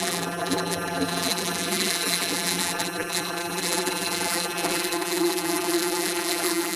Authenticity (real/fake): fake